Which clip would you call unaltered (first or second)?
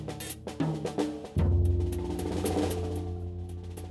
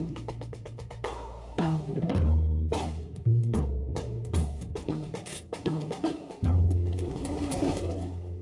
first